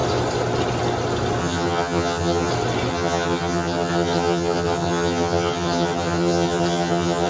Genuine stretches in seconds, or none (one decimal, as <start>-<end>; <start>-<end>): 0.0-1.4; 2.5-2.9